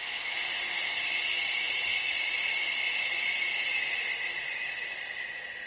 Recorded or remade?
remade